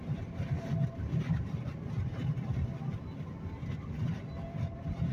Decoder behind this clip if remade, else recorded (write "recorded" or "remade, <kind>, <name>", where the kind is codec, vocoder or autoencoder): recorded